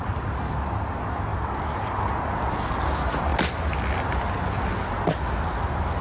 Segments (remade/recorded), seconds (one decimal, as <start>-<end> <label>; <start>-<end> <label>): 0.0-6.0 recorded